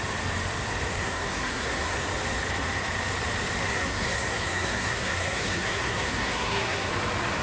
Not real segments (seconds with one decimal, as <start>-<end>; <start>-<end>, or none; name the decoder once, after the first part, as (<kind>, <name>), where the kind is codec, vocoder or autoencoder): 0.9-2.1 (codec, SNAC); 3.6-6.9